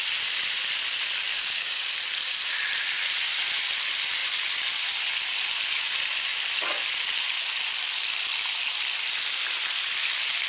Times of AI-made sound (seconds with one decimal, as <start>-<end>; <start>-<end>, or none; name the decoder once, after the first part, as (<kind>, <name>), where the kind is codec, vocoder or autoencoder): 1.3-1.8 (codec, DAC)